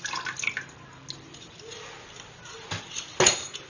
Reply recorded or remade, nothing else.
recorded